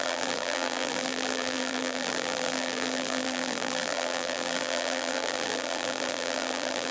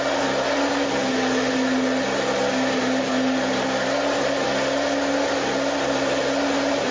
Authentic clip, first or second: second